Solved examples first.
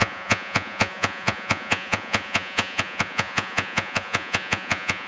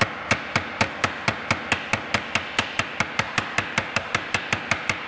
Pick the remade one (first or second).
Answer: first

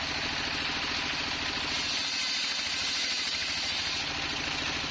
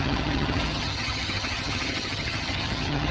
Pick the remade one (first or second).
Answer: second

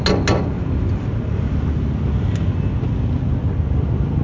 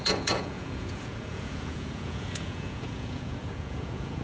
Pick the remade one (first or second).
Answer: second